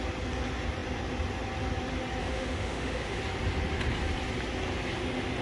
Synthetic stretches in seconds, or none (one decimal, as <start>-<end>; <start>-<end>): 2.2-3.2